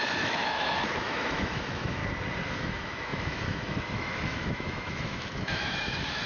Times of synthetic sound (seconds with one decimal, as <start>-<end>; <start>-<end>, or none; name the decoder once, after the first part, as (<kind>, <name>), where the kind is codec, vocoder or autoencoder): 0.0-2.0 (autoencoder, DAC-VAE); 2.6-6.3